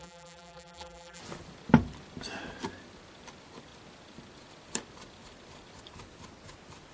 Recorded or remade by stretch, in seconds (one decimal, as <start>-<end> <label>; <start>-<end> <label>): 0.0-1.2 remade; 1.2-6.9 recorded